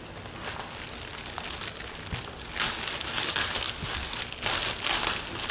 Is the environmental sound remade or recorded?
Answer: recorded